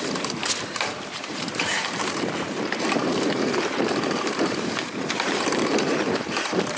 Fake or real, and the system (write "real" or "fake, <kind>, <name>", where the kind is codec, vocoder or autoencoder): fake, vocoder, BigVGAN v2